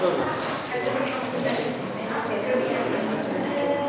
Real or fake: real